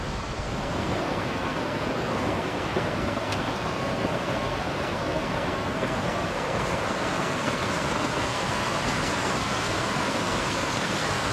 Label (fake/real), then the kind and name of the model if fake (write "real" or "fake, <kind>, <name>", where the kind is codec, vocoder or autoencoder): fake, codec, SNAC